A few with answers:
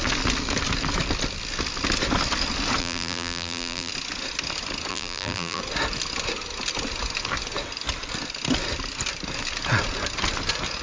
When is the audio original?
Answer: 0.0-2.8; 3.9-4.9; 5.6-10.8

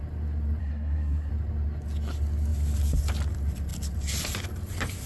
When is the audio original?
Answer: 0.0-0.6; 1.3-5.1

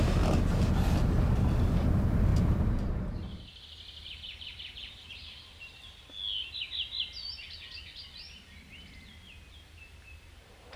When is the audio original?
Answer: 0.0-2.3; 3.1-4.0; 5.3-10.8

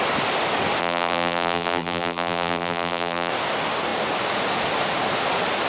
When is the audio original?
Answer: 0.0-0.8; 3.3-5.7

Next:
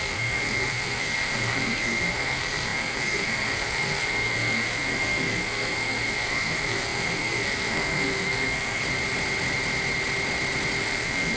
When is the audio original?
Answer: 8.8-10.8